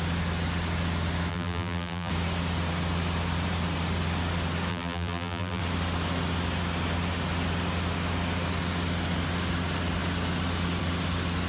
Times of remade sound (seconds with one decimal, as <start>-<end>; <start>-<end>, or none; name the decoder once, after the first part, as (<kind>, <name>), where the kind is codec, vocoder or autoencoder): 1.3-2.1 (vocoder, BigVGAN v2); 4.7-5.6